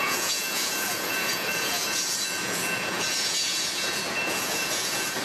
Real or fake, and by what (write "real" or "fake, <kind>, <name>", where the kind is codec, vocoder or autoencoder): fake, vocoder, Vocos